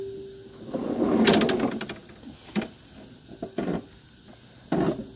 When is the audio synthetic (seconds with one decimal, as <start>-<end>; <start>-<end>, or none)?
none